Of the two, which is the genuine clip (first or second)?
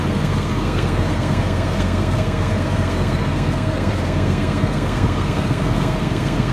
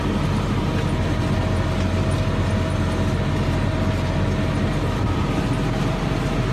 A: second